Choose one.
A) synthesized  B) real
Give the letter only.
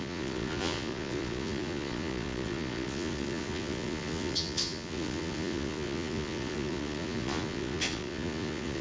A